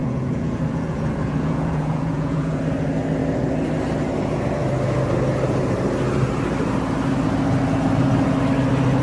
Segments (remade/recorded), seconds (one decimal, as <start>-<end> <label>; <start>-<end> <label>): 0.0-2.6 remade; 2.6-9.0 recorded